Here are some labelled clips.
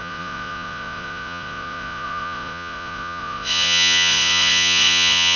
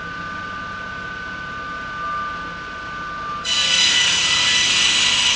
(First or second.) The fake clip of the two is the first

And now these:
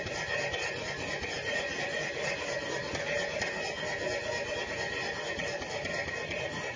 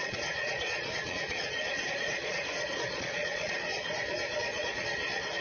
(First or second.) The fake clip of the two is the second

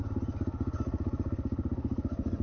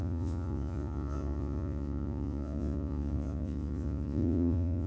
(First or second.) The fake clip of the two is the second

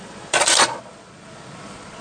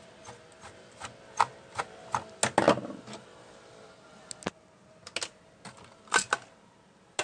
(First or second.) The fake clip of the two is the first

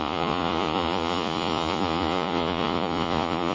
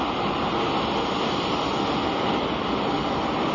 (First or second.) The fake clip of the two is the first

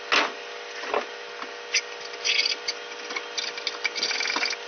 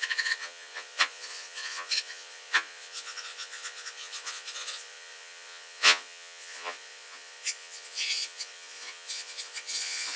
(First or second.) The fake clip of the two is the second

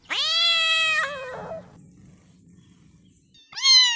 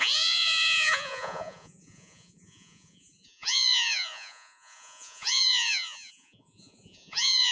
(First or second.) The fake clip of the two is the second